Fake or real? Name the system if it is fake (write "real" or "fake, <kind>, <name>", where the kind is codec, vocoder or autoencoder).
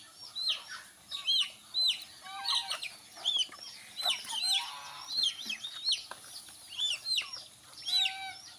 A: real